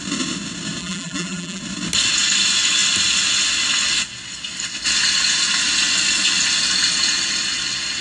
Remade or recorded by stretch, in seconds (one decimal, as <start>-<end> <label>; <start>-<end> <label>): 0.0-0.8 recorded; 0.8-1.6 remade; 1.6-8.0 recorded